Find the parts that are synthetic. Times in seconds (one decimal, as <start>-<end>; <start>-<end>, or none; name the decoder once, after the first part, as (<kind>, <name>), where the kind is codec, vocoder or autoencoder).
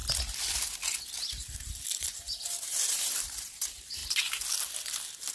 2.0-4.0 (vocoder, BigVGAN v2)